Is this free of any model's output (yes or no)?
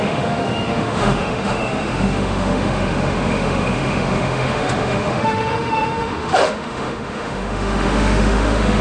no